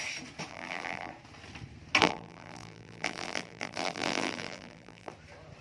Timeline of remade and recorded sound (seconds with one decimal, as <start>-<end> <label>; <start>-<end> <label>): 0.0-0.5 recorded; 0.5-1.1 remade; 1.1-2.0 recorded; 2.0-5.1 remade; 5.1-5.6 recorded